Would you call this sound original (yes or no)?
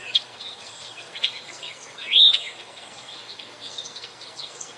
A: no